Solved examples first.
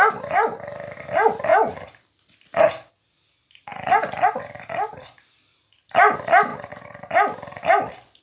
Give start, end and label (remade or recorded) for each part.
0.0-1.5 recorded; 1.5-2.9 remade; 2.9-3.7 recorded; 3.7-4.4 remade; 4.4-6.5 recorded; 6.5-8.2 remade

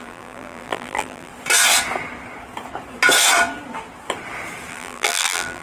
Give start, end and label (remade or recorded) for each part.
0.0-1.3 remade; 1.3-4.7 recorded; 4.7-5.6 remade